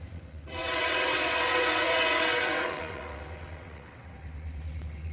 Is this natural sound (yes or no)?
no